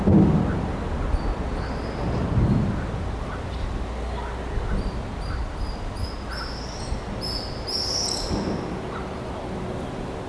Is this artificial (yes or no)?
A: no